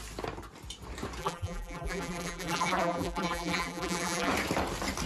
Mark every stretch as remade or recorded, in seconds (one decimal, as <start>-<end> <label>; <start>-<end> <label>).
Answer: 0.0-1.2 recorded; 1.2-4.3 remade; 4.3-5.1 recorded

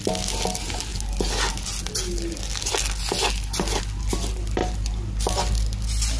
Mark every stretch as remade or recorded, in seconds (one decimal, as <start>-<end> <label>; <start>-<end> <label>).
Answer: 0.0-6.2 recorded

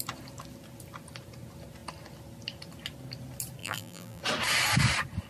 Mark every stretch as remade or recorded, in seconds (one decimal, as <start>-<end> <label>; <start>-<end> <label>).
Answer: 0.0-3.6 recorded; 3.6-4.2 remade; 4.2-5.3 recorded